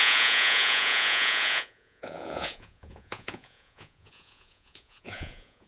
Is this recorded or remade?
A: remade